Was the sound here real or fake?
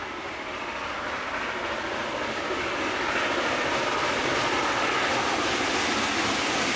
real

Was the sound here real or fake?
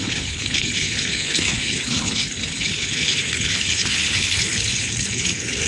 fake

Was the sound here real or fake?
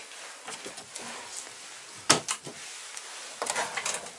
real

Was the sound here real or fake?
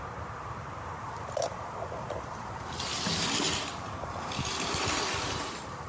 fake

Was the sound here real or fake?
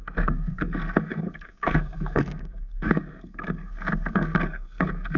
fake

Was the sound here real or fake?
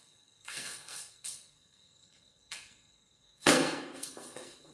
fake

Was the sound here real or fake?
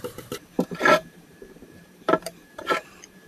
fake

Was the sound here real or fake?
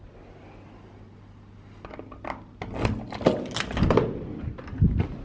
real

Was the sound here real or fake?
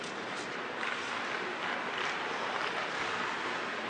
real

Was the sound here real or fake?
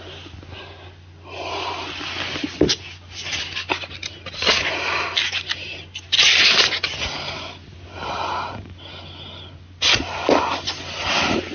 real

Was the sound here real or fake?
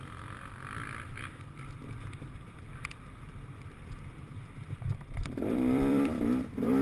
fake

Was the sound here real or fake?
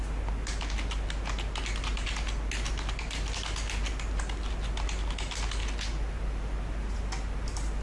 real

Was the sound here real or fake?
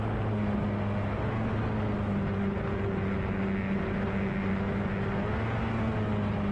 real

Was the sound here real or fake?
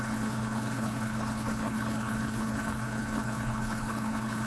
fake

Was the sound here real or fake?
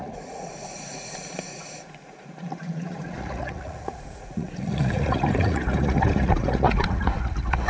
fake